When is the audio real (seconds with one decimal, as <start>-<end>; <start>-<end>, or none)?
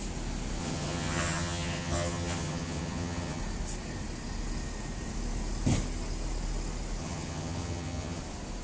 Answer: 0.0-0.6; 3.4-7.0; 8.2-8.6